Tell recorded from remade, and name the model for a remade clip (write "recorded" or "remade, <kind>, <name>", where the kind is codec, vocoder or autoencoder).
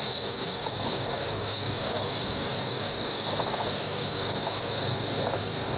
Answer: remade, codec, DAC